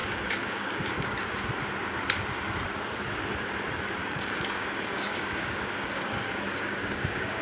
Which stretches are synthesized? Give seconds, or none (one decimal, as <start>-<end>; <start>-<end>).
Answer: 0.0-1.4; 4.0-7.4